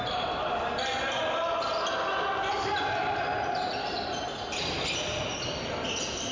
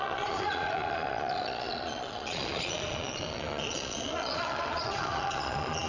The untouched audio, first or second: first